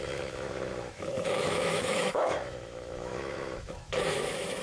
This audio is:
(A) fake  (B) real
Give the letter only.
A